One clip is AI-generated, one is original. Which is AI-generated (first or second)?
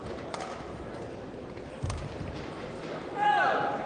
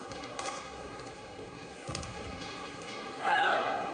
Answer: second